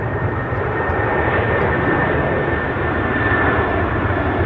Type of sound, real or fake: real